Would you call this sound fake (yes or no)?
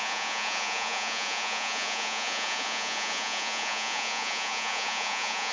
yes